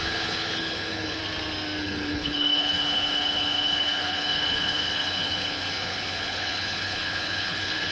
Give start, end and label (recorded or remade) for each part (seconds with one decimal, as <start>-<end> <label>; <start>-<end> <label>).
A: 0.0-1.2 remade; 1.2-1.8 recorded; 1.8-7.9 remade